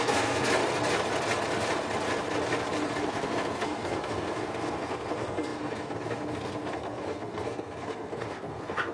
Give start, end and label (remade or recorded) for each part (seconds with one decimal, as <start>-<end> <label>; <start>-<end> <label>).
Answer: 0.0-0.6 remade; 0.6-3.1 recorded; 3.1-8.9 remade